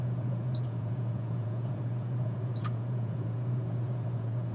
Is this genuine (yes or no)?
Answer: no